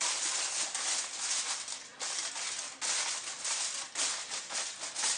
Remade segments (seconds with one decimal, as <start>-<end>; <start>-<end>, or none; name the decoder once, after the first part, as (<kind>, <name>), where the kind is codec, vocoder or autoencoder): none